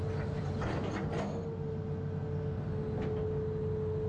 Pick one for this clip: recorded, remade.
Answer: recorded